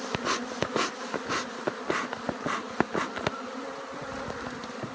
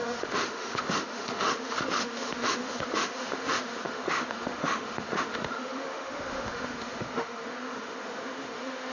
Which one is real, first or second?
first